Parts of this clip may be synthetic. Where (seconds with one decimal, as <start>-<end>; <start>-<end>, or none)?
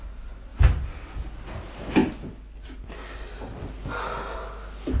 none